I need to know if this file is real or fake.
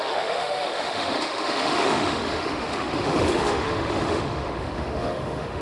fake